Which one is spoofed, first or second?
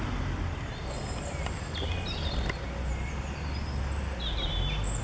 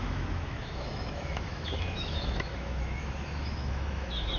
second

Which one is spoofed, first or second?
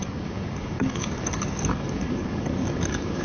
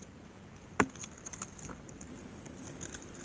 first